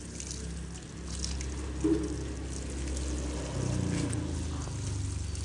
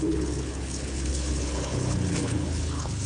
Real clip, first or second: first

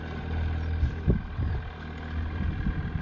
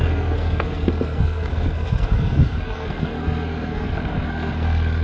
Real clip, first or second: first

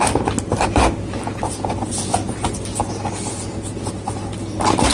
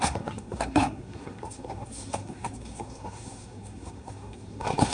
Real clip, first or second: first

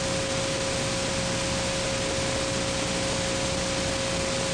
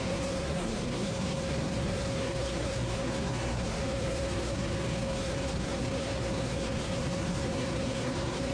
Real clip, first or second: first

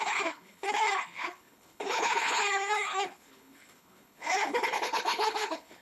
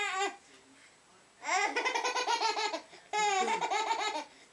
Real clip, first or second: second